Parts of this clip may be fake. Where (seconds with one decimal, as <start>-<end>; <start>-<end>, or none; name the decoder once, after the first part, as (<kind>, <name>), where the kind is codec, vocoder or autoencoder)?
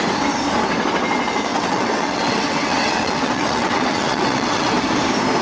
1.5-4.7 (vocoder, WaveNeXt)